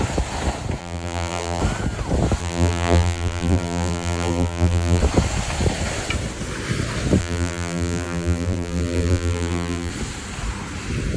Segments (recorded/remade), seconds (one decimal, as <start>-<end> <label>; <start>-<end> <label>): 0.0-0.8 recorded; 0.8-1.6 remade; 1.6-2.4 recorded; 2.4-5.0 remade; 5.0-7.2 recorded; 7.2-9.9 remade; 9.9-11.2 recorded